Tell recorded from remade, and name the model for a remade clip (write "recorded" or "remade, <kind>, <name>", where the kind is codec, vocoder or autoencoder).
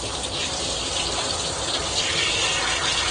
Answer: recorded